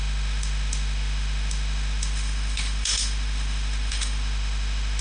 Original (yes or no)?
no